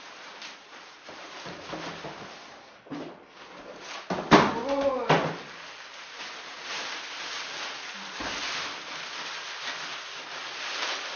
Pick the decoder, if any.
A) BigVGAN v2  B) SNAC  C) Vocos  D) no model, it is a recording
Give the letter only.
D